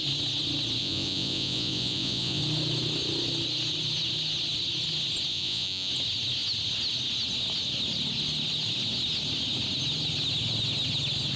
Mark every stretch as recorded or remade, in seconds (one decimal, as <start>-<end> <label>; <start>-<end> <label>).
0.0-0.8 recorded; 0.8-2.4 remade; 2.4-5.3 recorded; 5.3-5.9 remade; 5.9-11.4 recorded